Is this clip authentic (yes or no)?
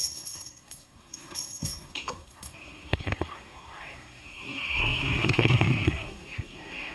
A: no